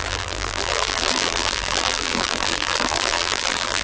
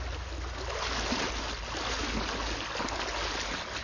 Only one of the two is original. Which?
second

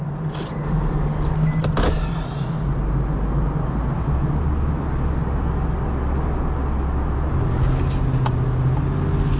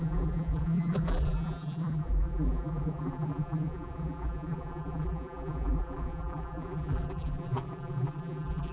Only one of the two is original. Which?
first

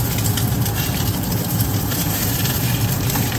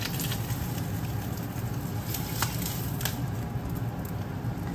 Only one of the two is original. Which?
second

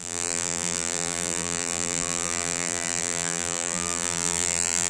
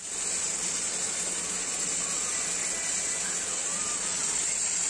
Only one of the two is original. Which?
second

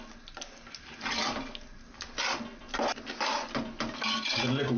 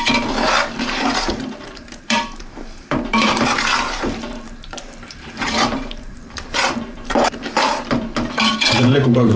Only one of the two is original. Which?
first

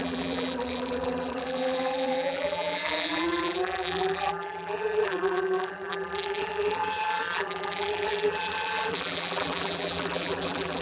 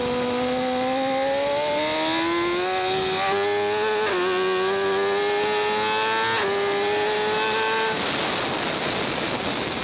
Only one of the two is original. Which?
second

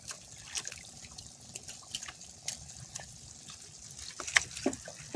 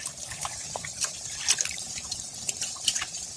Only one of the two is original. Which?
first